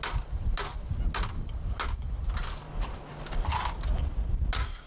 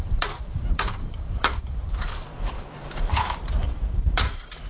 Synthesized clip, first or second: second